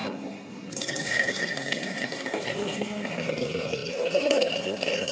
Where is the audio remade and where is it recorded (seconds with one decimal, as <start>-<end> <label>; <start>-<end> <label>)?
0.0-5.1 remade